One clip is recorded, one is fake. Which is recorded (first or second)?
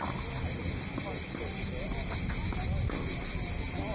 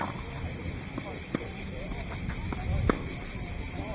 first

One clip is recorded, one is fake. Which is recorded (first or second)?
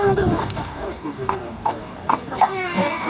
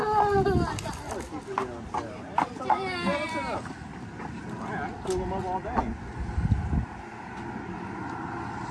second